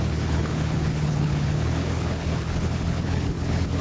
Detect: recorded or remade remade